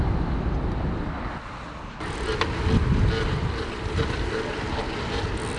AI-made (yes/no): no